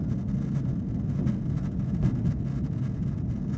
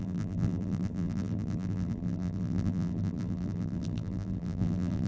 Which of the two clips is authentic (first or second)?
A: first